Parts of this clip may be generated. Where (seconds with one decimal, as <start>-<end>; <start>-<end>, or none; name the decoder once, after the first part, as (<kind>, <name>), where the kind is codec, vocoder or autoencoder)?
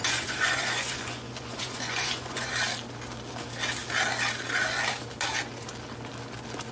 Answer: 0.0-2.5 (vocoder, Vocos)